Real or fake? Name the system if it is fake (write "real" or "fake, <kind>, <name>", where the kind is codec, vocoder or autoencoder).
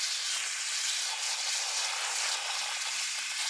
real